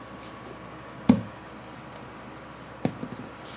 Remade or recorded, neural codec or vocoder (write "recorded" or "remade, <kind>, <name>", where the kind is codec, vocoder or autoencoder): recorded